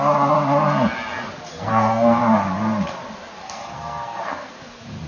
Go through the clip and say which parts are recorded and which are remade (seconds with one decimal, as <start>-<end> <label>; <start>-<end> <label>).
0.0-1.5 recorded; 1.5-2.2 remade; 2.2-3.4 recorded; 3.4-4.5 remade; 4.5-5.1 recorded